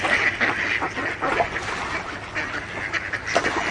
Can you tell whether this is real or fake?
real